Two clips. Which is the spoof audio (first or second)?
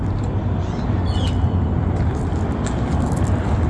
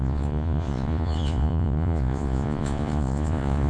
second